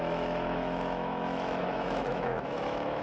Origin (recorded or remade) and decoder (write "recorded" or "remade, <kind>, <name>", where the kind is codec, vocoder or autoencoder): remade, autoencoder, DAC-VAE